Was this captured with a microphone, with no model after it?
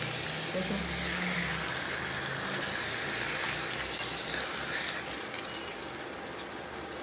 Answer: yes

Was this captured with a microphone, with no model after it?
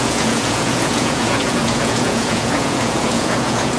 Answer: no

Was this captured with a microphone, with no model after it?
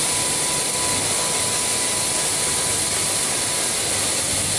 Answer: yes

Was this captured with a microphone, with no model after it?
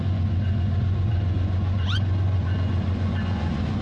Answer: no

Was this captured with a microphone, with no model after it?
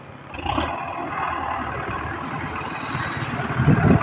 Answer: yes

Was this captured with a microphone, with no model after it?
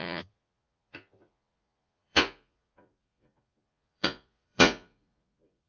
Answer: no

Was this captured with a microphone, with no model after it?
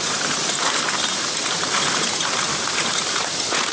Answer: yes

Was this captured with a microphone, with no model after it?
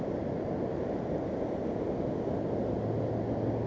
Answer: yes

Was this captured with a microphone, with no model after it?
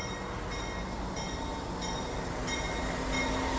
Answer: yes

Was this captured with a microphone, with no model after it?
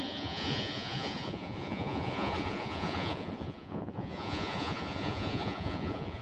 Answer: no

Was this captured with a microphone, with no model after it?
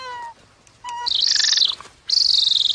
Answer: yes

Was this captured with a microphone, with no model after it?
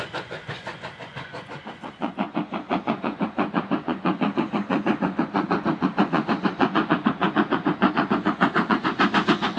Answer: no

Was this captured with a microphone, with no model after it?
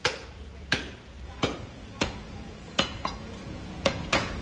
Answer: no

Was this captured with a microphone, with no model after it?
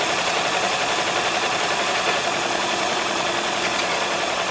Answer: no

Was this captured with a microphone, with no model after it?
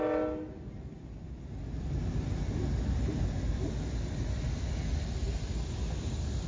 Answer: yes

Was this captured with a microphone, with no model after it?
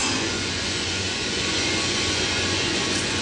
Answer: no